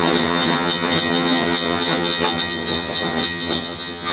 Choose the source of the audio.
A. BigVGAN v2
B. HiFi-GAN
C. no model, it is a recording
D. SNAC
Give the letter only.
B